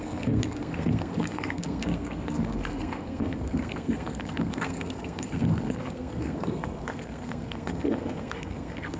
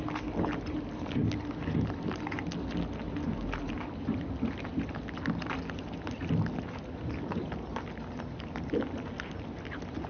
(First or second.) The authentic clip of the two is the second